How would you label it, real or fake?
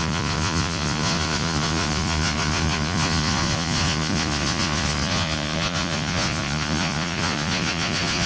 fake